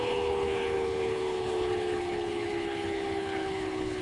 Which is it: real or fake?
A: fake